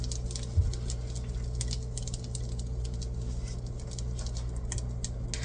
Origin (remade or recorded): recorded